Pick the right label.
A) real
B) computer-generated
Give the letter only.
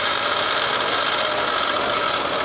A